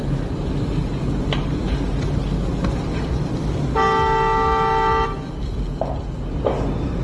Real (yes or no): yes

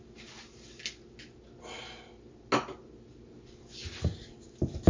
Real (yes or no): yes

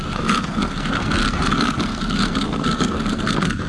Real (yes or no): no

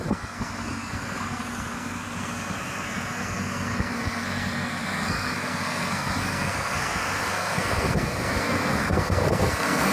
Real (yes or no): no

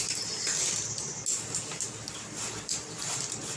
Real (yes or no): yes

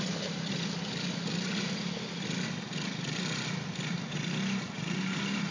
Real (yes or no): yes